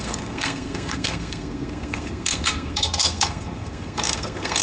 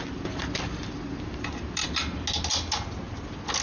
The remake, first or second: first